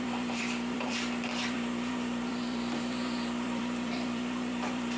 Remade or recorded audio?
remade